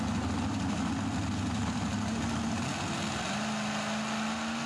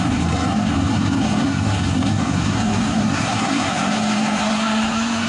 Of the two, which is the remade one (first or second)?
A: second